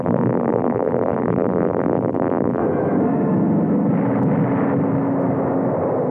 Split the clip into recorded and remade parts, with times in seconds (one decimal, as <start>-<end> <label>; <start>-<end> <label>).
0.0-2.6 remade; 2.6-6.1 recorded